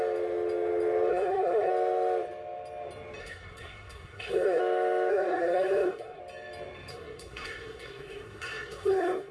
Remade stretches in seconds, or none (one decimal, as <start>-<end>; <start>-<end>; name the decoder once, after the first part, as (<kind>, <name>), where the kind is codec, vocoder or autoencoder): 1.1-1.7 (codec, SNAC); 3.2-4.6; 5.1-6.2; 6.9-9.3